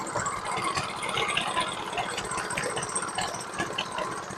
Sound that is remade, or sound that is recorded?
recorded